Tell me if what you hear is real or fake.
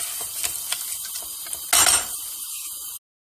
real